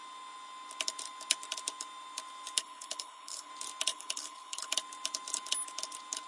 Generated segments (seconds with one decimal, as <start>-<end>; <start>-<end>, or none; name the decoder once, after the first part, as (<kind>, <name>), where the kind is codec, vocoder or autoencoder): 2.6-3.5 (codec, HILCodec); 3.9-4.7